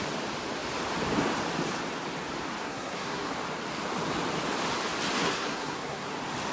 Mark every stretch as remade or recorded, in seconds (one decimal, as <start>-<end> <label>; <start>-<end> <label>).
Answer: 0.0-2.6 recorded; 2.6-3.3 remade; 3.3-5.2 recorded; 5.2-6.1 remade; 6.1-6.5 recorded